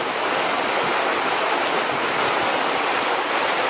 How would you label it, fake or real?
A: real